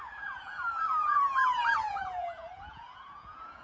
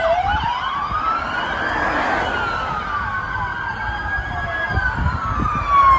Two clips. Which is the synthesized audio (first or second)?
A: first